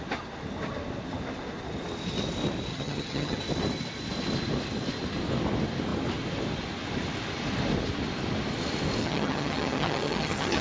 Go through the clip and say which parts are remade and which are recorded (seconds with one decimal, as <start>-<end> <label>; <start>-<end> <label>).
0.0-2.7 recorded; 2.7-3.4 remade; 3.4-9.0 recorded; 9.0-10.6 remade